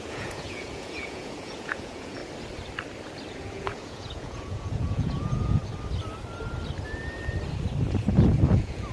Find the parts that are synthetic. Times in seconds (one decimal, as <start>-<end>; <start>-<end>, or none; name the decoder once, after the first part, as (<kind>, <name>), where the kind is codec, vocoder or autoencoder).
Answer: 0.0-2.2 (vocoder, Vocos); 3.3-5.6; 8.1-8.9